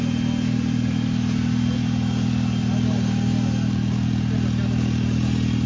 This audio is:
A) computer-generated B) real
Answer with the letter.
B